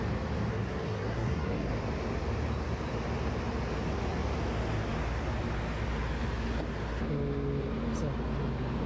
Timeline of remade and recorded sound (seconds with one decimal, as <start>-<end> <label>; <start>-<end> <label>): 0.0-0.5 recorded; 0.5-1.7 remade; 1.7-8.9 recorded